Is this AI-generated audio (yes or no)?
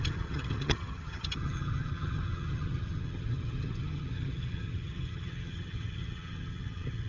yes